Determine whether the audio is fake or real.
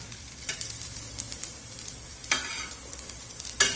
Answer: fake